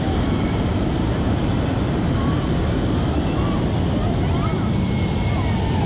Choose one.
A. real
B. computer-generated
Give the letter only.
A